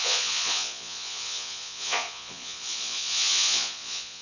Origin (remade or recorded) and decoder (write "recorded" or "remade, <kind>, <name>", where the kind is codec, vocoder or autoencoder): remade, vocoder, Vocos